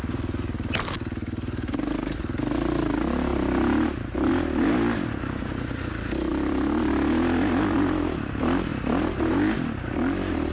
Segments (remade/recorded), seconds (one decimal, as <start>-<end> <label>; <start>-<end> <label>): 0.0-6.3 recorded; 6.3-6.9 remade; 6.9-10.5 recorded